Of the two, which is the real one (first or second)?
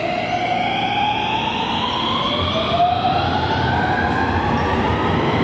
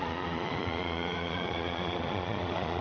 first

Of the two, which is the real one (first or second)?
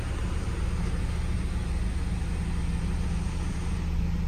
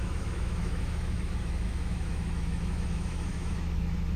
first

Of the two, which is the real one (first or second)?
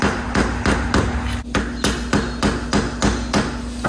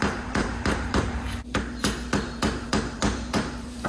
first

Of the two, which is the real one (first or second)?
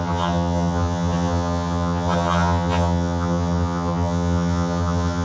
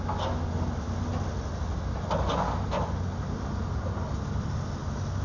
second